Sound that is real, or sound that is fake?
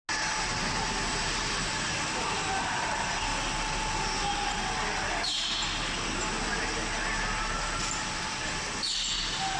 real